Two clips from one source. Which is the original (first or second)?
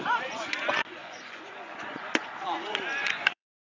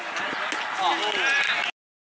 second